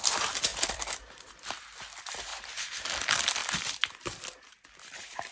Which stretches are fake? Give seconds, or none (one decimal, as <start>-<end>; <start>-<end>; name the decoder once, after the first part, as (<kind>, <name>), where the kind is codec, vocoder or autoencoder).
0.5-1.6 (vocoder, BigVGAN v2); 3.4-4.3